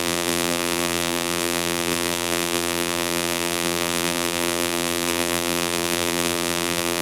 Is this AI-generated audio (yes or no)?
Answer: yes